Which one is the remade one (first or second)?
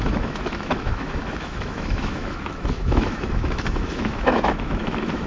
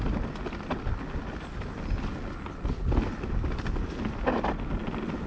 first